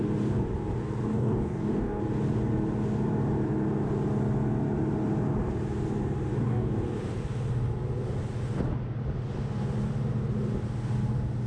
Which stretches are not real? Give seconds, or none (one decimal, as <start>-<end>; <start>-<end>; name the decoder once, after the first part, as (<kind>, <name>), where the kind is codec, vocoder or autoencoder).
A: 1.1-2.0 (codec, DAC); 6.3-6.8